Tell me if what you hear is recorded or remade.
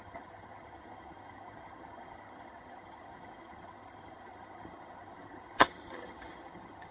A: remade